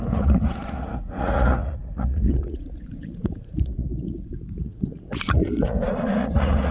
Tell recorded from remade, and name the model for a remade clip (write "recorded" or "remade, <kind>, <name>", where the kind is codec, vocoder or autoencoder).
remade, vocoder, Vocos